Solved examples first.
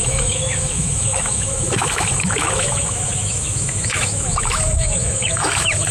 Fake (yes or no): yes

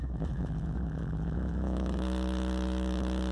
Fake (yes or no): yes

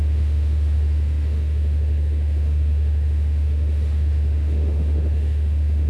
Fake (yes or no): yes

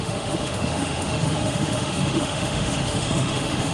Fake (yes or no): yes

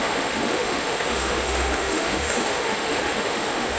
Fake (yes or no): yes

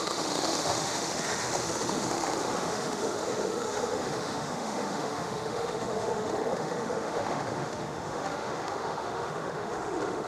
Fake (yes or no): yes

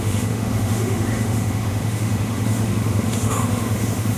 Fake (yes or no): yes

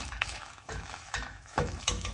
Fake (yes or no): yes